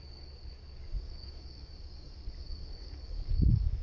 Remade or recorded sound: remade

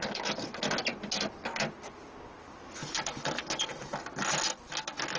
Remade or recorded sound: recorded